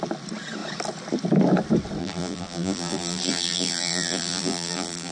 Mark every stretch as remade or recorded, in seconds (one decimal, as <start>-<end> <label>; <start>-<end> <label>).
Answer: 0.0-2.0 recorded; 2.0-5.1 remade